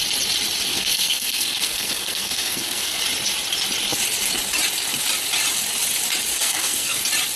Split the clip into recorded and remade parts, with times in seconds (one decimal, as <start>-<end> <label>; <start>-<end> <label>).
0.0-0.7 recorded; 0.7-3.0 remade; 3.0-6.3 recorded; 6.3-7.0 remade; 7.0-7.4 recorded